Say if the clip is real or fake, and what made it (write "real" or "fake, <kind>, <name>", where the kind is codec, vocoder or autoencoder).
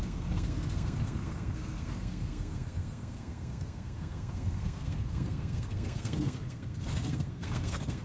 fake, codec, SNAC